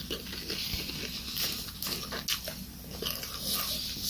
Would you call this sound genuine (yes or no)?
yes